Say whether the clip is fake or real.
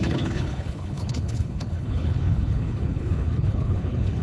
fake